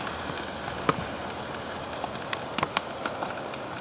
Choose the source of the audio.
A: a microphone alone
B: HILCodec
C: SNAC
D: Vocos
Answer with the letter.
A